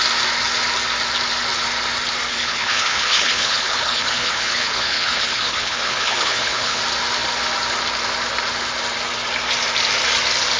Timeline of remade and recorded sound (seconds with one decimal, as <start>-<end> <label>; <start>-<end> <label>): 0.0-2.3 recorded; 2.3-6.8 remade; 6.8-10.6 recorded